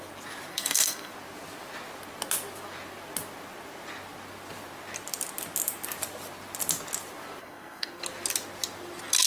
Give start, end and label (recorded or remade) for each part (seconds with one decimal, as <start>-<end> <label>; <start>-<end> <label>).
0.0-0.5 recorded; 0.5-1.1 remade; 1.1-7.4 recorded; 7.4-8.0 remade; 8.0-9.3 recorded